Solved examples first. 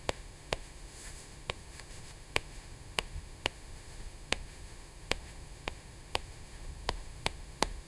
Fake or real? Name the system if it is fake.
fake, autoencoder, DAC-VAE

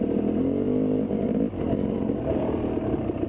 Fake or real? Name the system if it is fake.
real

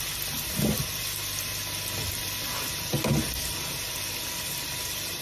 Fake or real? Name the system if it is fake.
real